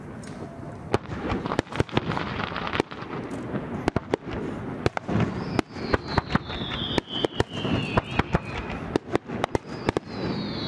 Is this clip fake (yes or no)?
no